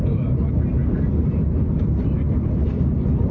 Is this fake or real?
real